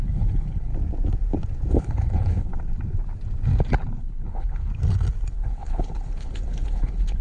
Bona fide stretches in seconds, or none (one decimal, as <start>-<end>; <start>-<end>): 0.7-1.7; 2.5-4.0; 4.7-5.3